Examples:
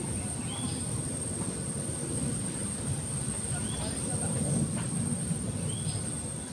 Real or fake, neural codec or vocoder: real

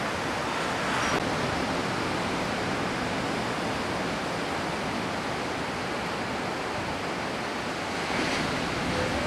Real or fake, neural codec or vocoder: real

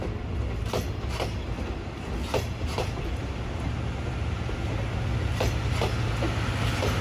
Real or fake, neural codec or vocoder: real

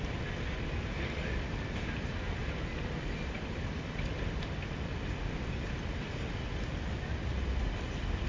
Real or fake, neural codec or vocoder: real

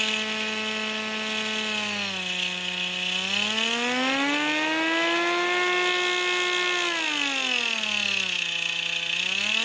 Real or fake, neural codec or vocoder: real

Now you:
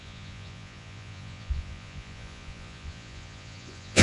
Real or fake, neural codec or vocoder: fake, vocoder, Vocos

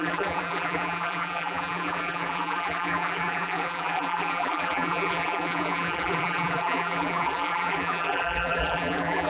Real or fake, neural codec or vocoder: fake, vocoder, BigVGAN v2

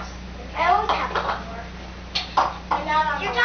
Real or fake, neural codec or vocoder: real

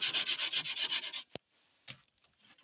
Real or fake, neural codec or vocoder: real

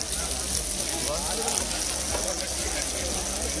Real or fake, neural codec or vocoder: real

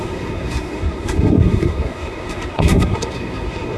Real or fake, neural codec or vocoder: fake, codec, SNAC